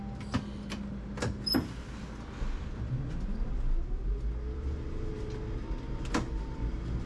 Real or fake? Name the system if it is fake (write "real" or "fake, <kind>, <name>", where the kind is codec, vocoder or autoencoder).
real